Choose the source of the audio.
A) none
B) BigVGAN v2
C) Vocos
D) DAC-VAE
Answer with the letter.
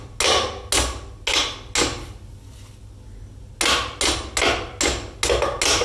A